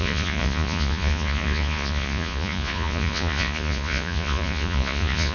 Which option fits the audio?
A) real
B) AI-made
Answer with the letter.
B